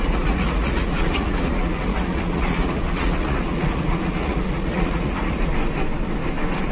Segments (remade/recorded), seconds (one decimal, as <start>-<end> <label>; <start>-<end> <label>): 0.0-5.5 remade; 5.5-6.7 recorded